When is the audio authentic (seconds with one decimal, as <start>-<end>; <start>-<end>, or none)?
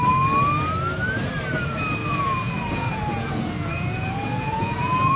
0.0-2.0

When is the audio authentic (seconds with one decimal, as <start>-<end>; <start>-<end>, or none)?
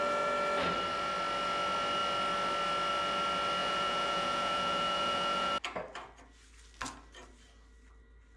0.0-3.6; 5.5-8.4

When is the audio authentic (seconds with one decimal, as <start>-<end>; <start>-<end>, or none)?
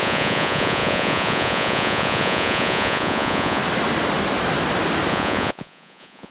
3.6-5.1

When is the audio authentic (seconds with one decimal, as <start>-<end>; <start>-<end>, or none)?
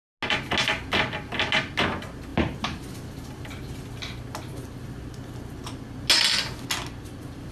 0.0-7.5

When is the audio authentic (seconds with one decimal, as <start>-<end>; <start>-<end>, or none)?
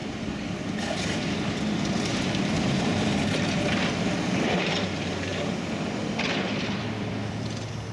0.0-0.9; 2.1-2.9; 5.3-5.9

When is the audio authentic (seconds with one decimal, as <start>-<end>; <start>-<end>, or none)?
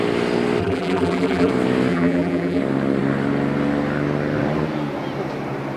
0.0-0.6; 1.5-1.9; 2.6-5.8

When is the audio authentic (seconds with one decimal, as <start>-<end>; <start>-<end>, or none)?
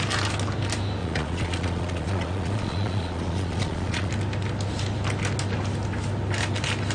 0.0-1.0; 4.1-6.9